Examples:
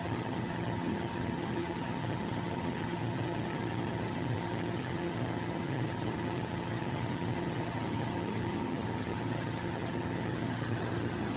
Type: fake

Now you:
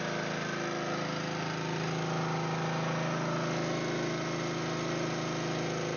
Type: real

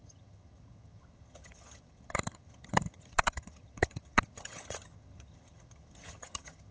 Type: fake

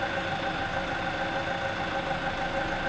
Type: real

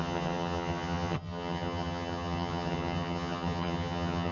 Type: fake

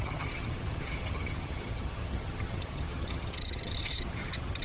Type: fake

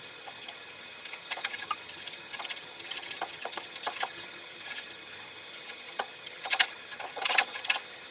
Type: fake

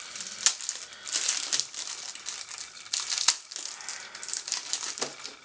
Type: real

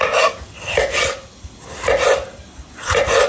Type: real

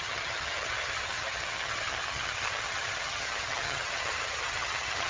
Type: fake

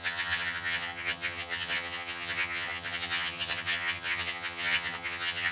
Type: fake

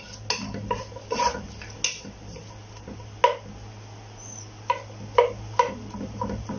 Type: real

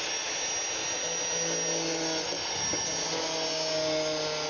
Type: real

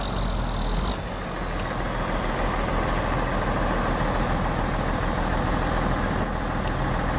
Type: real